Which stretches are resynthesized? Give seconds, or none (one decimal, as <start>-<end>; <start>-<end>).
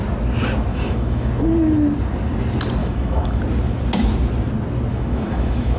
0.7-1.3; 2.8-3.4; 4.9-5.8